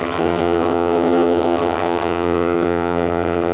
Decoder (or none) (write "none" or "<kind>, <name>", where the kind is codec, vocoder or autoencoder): vocoder, HiFi-GAN